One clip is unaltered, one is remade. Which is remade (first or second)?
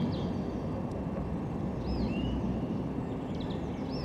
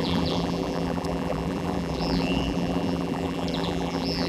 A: second